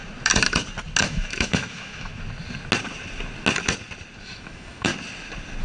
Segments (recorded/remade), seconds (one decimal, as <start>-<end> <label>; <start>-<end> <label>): 0.0-1.0 recorded; 1.0-2.1 remade; 2.1-4.2 recorded; 4.2-4.9 remade; 4.9-5.6 recorded

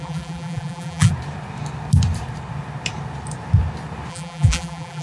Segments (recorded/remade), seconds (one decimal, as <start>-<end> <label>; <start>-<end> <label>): 0.0-1.1 remade; 1.1-4.1 recorded; 4.1-5.0 remade